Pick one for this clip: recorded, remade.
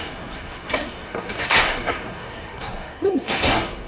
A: remade